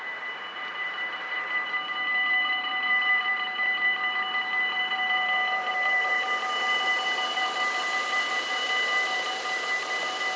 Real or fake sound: fake